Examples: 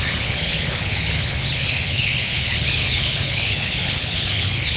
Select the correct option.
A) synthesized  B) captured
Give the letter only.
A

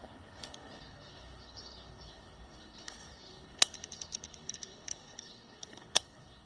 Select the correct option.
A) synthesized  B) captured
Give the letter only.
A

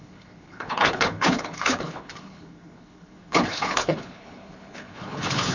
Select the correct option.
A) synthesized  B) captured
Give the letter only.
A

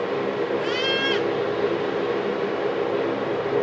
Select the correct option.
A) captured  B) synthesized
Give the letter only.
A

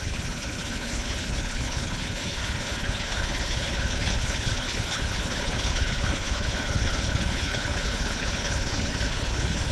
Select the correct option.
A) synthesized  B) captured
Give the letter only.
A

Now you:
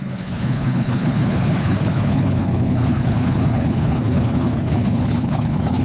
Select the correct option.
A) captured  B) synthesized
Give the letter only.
B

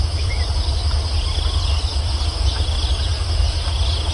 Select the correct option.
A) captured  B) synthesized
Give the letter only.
A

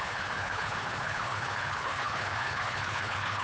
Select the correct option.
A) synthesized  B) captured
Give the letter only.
A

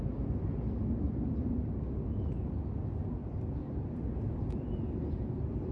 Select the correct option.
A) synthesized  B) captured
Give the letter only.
B